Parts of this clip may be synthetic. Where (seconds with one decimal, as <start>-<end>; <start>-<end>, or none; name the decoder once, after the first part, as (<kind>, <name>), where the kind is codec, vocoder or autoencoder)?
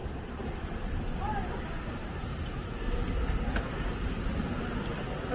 0.0-1.6 (vocoder, BigVGAN v2); 2.0-5.3